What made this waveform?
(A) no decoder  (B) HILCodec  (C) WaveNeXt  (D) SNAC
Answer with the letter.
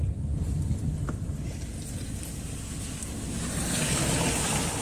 A